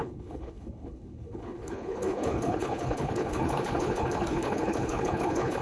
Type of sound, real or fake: fake